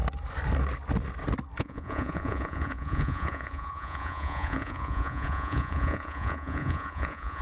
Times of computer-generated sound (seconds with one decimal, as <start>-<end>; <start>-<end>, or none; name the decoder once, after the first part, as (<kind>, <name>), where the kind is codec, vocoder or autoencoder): 1.6-7.4 (vocoder, Vocos)